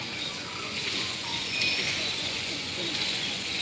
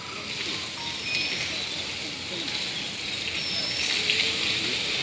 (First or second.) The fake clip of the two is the first